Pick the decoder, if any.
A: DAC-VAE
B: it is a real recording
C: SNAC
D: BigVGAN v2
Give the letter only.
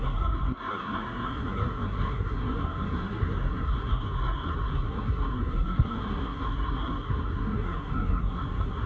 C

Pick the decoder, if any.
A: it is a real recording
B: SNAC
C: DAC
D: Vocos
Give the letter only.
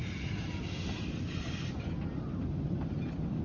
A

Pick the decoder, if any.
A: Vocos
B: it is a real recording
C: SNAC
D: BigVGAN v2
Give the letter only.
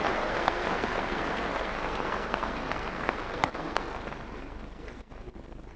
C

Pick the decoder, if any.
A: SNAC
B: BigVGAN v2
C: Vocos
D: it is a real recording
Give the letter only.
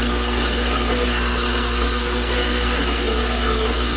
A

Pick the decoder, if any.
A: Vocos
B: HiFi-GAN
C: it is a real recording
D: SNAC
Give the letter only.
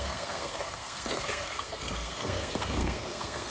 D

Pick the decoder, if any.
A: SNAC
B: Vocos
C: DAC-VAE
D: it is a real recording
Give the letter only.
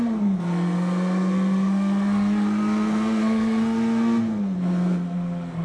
A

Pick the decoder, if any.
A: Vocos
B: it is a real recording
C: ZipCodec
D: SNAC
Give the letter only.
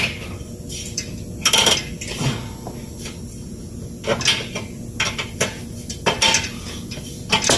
B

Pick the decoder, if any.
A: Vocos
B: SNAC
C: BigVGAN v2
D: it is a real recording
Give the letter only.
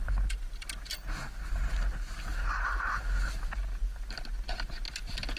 D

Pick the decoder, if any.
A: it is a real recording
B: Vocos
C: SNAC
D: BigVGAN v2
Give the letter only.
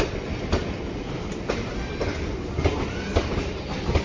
A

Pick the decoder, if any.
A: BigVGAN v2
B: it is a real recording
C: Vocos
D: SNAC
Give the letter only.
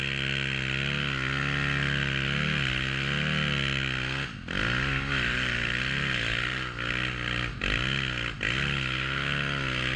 B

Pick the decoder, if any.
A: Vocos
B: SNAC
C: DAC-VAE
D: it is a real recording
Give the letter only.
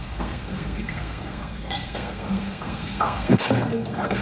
B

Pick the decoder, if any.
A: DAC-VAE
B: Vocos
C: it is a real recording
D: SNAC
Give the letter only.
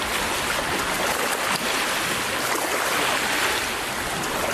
C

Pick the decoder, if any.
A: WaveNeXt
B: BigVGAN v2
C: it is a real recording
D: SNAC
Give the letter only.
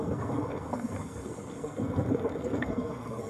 D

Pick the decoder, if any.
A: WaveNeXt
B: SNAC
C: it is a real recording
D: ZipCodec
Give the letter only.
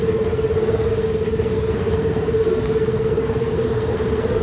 B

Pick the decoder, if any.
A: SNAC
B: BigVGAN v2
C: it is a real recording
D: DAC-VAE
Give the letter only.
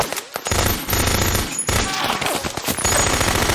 C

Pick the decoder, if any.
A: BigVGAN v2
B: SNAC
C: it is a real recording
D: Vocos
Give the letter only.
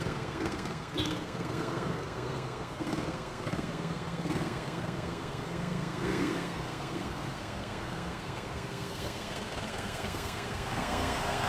B